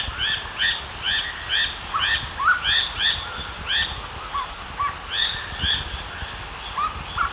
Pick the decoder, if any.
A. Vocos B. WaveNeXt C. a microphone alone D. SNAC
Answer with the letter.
C